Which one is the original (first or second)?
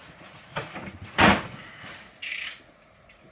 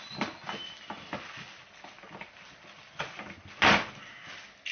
second